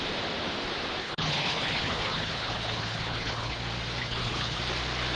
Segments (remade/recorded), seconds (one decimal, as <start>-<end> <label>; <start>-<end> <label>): 0.0-1.0 recorded; 1.0-3.6 remade; 3.6-4.0 recorded; 4.0-4.6 remade; 4.6-5.2 recorded